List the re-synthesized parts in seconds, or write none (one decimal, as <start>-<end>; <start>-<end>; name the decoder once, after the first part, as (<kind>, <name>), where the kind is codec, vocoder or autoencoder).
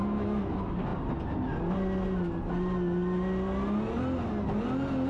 0.0-0.5 (autoencoder, DAC-VAE)